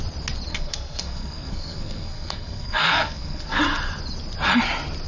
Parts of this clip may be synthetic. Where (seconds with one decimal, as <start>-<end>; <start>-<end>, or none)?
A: 0.5-3.6